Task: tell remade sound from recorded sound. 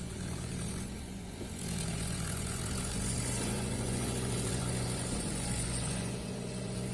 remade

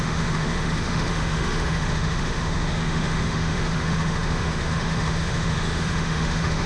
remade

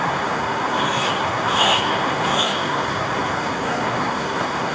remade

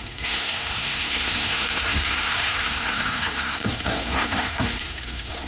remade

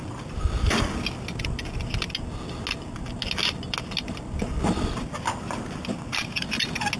recorded